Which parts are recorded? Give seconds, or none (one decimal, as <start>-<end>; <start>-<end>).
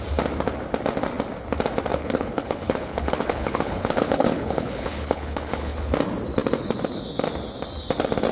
0.0-1.9; 5.8-8.3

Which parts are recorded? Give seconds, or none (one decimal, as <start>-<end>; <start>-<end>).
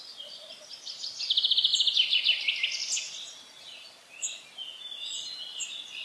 0.0-6.0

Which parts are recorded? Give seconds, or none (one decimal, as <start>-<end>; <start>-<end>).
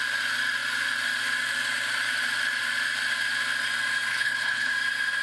0.0-4.1; 4.7-5.2